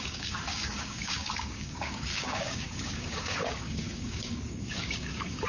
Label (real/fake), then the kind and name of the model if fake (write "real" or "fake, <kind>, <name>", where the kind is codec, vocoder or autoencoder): fake, codec, DAC